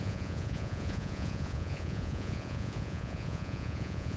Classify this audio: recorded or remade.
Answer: remade